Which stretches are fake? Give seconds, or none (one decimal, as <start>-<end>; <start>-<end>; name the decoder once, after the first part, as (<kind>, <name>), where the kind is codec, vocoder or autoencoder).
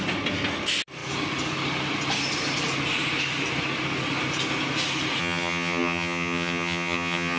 5.2-7.4 (vocoder, HiFi-GAN)